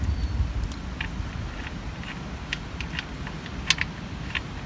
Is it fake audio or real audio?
real